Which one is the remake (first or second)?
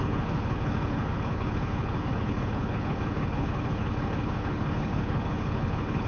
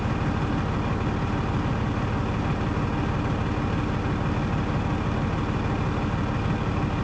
first